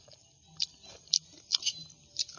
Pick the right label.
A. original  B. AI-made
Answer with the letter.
A